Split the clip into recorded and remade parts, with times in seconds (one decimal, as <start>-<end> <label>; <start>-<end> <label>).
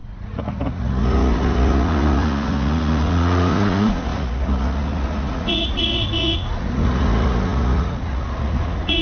0.0-9.0 remade